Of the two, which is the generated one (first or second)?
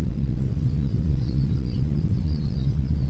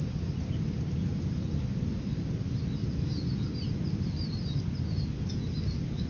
first